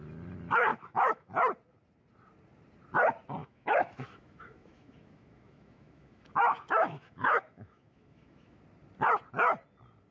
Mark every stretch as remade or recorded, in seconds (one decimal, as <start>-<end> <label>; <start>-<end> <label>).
0.0-0.7 recorded; 0.7-1.3 remade; 1.3-3.4 recorded; 3.4-8.6 remade; 8.6-10.1 recorded